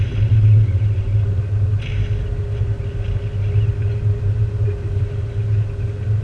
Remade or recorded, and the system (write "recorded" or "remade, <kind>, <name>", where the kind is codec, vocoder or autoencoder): recorded